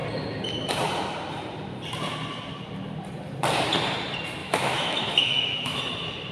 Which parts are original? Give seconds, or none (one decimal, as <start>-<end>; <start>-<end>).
0.0-4.4; 5.8-6.3

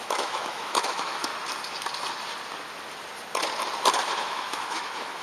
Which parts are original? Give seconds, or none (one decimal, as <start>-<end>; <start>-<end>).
1.3-4.2

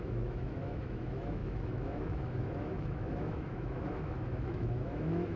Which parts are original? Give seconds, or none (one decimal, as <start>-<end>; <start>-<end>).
none

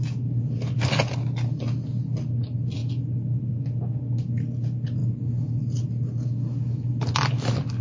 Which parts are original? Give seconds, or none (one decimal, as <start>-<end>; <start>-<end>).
0.0-7.8